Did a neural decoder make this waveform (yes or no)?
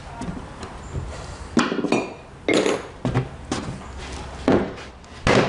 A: no